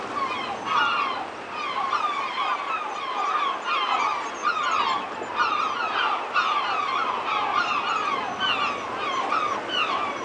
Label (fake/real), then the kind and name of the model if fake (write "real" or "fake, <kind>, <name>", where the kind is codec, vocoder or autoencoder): real